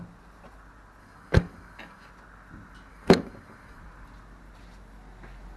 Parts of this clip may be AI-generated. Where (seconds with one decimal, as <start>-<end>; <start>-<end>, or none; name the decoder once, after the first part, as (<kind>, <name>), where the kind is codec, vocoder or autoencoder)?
1.0-2.1 (codec, DAC); 2.9-3.8